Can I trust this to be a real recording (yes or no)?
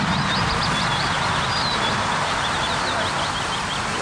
yes